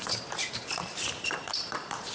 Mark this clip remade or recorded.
remade